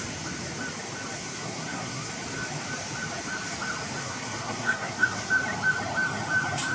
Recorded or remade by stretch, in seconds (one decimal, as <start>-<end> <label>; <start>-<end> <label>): 0.0-1.2 recorded; 1.2-2.1 remade; 2.1-4.0 recorded; 4.0-5.3 remade; 5.3-6.7 recorded